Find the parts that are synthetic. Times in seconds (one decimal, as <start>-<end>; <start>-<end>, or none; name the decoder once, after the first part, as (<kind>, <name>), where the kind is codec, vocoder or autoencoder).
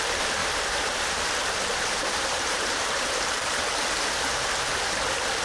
0.4-3.6 (vocoder, BigVGAN v2)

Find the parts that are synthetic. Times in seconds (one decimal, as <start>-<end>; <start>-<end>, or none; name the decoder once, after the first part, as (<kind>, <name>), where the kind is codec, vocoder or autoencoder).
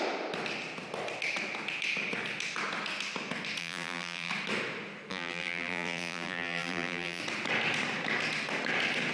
3.6-4.3 (vocoder, BigVGAN v2); 5.1-7.2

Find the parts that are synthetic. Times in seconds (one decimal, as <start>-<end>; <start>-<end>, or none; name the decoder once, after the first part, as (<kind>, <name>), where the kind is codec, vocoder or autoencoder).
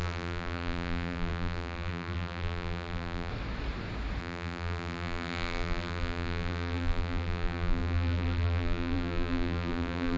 0.0-3.3 (vocoder, BigVGAN v2); 4.2-10.2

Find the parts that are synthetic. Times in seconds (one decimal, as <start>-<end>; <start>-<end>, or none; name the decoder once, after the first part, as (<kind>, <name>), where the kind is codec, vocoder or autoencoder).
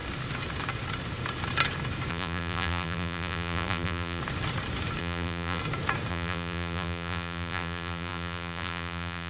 2.1-4.2 (vocoder, BigVGAN v2); 5.0-5.6; 6.1-9.3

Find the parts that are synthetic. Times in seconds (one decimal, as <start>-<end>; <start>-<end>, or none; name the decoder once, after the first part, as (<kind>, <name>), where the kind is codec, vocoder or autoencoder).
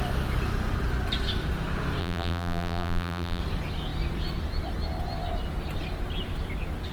2.0-3.4 (vocoder, BigVGAN v2)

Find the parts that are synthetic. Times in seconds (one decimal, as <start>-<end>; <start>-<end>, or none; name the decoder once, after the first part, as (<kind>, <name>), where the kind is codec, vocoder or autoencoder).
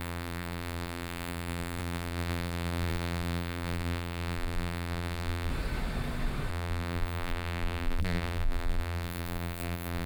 0.0-5.5 (vocoder, BigVGAN v2); 6.5-10.1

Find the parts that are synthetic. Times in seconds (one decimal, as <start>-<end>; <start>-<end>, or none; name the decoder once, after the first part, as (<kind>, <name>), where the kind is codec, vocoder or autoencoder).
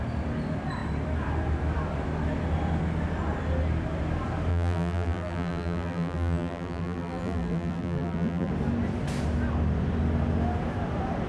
4.5-8.5 (vocoder, BigVGAN v2)